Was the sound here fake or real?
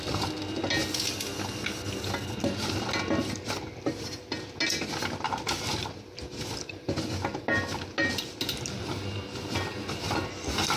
real